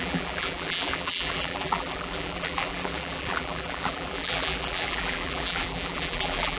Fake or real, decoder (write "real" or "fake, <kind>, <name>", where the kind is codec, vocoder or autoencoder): fake, vocoder, BigVGAN v2